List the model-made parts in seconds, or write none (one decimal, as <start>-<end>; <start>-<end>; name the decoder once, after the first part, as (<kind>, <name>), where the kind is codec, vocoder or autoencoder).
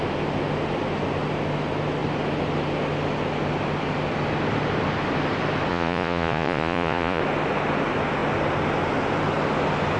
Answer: 5.7-7.2 (vocoder, Vocos)